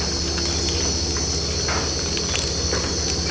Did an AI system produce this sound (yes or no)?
no